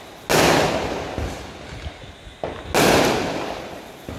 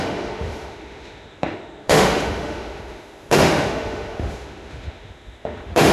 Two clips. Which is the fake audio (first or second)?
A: second